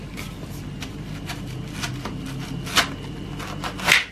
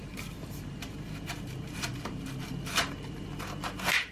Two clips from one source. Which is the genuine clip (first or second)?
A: first